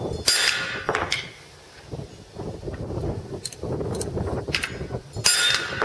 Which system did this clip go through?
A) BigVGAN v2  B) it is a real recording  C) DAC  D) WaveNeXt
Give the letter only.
B